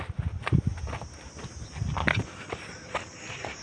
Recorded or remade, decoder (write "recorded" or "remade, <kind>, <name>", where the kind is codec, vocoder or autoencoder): recorded